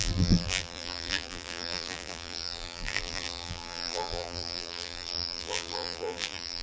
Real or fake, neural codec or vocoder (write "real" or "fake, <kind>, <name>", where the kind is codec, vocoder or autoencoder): fake, vocoder, BigVGAN v2